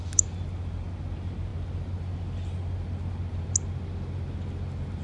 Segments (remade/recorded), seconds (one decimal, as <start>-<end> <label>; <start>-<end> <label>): 0.0-5.0 recorded